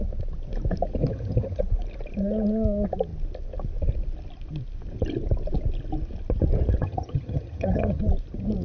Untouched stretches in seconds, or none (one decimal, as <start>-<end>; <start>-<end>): 0.0-1.0; 1.6-6.8; 8.0-8.6